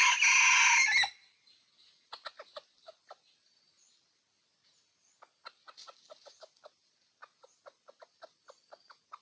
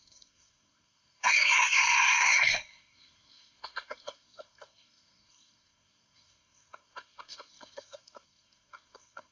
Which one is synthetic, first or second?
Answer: second